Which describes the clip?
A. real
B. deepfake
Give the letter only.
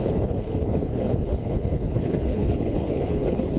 B